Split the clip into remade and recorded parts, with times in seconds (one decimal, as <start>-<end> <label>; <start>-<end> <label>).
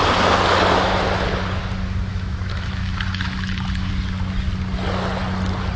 0.0-2.1 recorded; 2.1-3.9 remade; 3.9-5.8 recorded